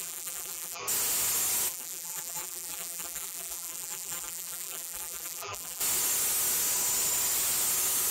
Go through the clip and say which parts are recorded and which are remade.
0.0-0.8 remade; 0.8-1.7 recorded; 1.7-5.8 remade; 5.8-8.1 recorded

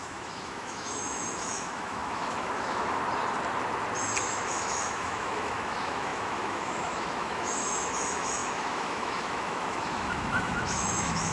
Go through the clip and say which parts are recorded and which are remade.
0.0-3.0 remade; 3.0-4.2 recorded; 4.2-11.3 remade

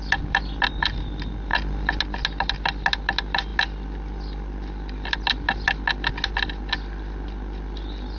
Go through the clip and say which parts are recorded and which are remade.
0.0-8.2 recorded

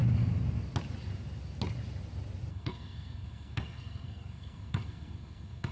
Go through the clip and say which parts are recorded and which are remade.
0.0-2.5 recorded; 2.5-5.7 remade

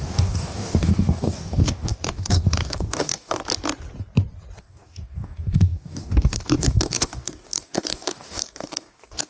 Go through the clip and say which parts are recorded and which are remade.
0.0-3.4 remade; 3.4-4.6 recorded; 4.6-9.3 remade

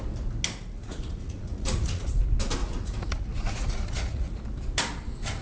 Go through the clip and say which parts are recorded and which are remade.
0.0-0.8 recorded; 0.8-2.1 remade; 2.1-2.6 recorded; 2.6-4.4 remade; 4.4-5.4 recorded